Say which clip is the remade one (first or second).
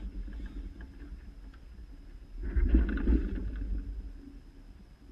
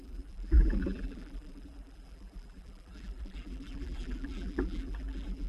second